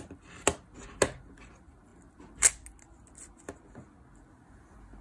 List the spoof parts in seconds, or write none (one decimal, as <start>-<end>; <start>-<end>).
none